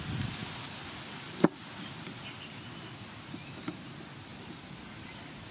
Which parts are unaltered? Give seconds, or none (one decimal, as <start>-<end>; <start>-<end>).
0.0-5.5